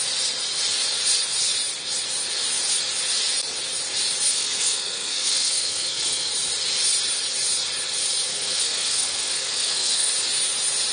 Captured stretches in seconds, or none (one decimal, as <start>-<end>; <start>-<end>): 0.0-4.3; 6.3-8.3; 10.1-10.9